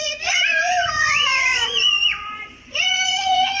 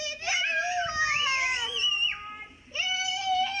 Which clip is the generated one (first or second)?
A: first